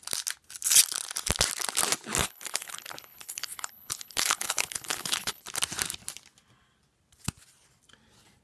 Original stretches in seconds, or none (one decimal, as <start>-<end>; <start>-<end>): 0.0-2.2; 5.4-8.4